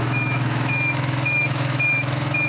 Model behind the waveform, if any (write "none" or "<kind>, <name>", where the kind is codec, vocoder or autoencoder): autoencoder, DAC-VAE